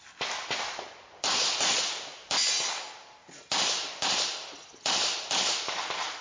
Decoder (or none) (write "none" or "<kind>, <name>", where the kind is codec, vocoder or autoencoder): none